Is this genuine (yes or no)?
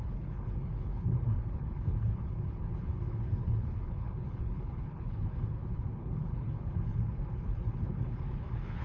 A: no